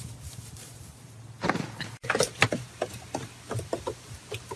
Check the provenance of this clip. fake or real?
fake